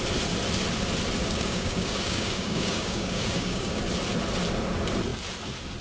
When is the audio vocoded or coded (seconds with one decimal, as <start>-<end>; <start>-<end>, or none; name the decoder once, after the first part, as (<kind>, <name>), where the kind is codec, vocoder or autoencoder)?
1.2-3.8 (codec, DAC)